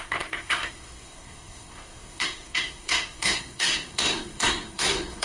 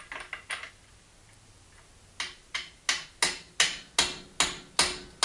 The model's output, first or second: first